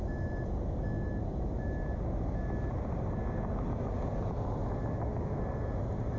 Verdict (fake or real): real